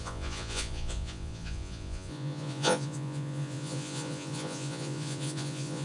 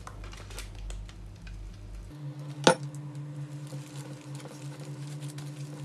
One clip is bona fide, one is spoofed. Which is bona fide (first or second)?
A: second